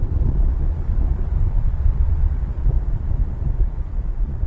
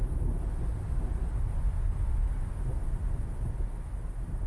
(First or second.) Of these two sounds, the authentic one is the second